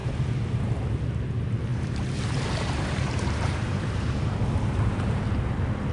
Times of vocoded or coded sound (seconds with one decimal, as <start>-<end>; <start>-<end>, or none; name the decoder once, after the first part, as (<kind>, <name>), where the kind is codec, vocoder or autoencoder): 1.7-5.2 (vocoder, BigVGAN v2)